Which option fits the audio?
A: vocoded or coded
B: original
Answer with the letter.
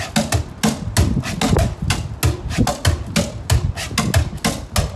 B